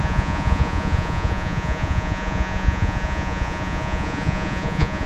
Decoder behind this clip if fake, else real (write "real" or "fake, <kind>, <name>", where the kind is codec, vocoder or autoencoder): fake, vocoder, Vocos